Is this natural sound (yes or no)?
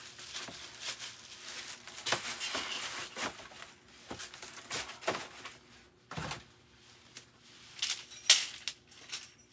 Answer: yes